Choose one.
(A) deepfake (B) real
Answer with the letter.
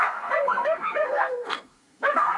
A